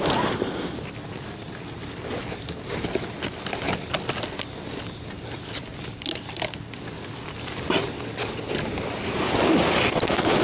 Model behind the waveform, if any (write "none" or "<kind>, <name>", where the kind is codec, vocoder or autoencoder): none